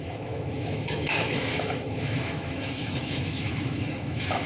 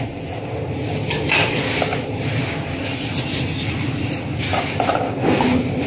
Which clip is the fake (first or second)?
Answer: first